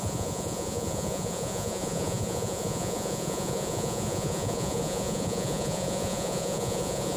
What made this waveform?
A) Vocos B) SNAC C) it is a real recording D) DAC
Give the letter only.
A